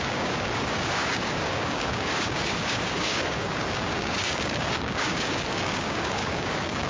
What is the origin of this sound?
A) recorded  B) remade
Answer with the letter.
B